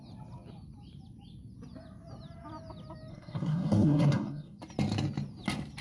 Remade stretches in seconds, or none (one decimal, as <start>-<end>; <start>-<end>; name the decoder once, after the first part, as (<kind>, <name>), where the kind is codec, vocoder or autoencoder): 3.1-4.6 (codec, SNAC)